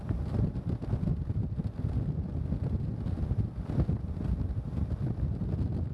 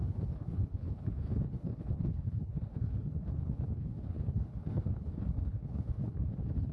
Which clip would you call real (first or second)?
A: first